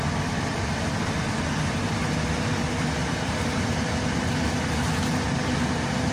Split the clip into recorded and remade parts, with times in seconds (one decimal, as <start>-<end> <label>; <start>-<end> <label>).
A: 0.0-3.0 recorded; 3.0-6.1 remade